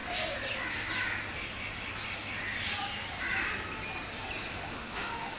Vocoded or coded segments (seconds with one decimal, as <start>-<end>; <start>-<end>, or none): 4.5-5.4